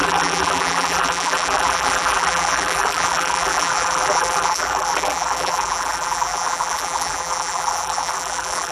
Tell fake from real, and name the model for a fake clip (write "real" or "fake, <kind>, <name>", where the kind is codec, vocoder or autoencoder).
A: fake, vocoder, BigVGAN v2